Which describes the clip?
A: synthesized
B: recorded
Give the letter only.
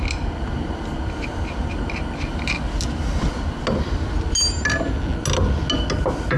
B